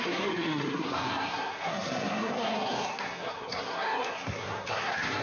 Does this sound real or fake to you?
fake